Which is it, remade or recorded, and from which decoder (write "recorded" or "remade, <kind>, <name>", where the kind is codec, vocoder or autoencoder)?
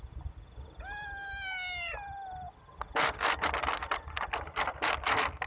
recorded